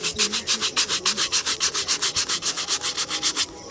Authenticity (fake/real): real